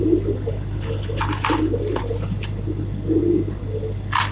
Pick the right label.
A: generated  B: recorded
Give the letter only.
B